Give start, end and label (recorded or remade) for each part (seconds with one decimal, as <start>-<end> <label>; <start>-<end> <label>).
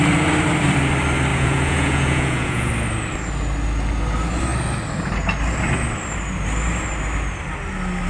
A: 0.0-1.3 recorded; 1.3-2.7 remade; 2.7-8.1 recorded